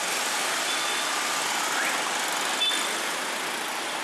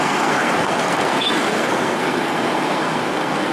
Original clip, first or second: first